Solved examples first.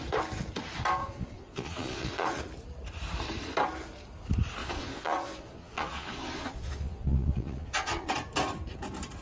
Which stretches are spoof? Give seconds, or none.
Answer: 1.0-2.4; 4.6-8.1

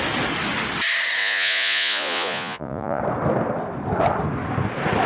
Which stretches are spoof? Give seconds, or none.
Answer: 1.2-3.0

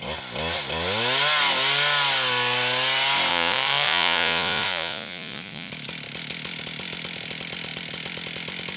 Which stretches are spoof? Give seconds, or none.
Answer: 3.3-5.7

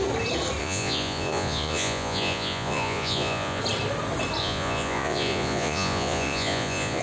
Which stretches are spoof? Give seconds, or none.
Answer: 0.6-3.6; 4.4-7.0

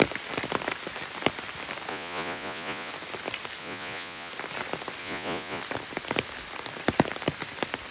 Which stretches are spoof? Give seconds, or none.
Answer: 1.9-2.9; 3.6-4.3; 5.0-5.6